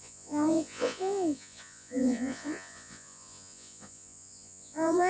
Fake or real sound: fake